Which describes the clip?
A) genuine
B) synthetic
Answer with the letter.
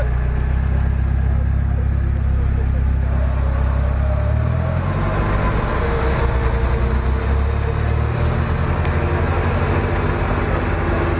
A